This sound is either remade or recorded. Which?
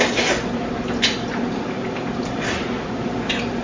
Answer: recorded